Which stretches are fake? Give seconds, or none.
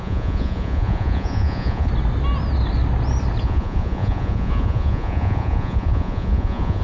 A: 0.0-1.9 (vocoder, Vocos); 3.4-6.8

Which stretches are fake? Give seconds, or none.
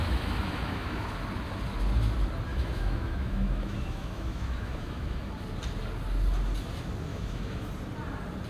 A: 0.0-1.1 (autoencoder, DAC-VAE); 2.5-5.3; 7.1-7.7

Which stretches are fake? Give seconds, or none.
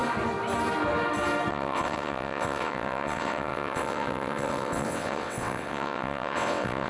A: 1.5-6.9 (vocoder, WaveNeXt)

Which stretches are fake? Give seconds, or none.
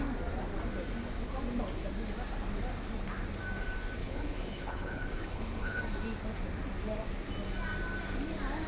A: 4.0-5.8 (codec, HILCodec)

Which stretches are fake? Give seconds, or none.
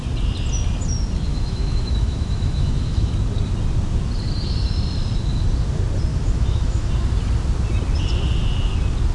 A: 1.3-3.1 (autoencoder, DAC-VAE); 6.1-6.9